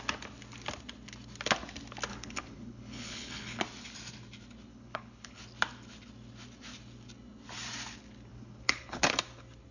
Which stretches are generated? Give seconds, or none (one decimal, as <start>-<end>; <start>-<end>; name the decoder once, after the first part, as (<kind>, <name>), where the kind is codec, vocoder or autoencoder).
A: 2.1-3.6 (codec, HILCodec); 4.7-5.4; 8.3-9.0